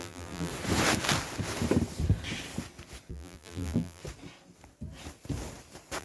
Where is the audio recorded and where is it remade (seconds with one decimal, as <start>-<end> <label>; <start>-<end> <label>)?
0.0-0.5 remade; 0.5-3.1 recorded; 3.1-4.0 remade; 4.0-6.0 recorded